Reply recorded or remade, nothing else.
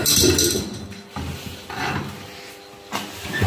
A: recorded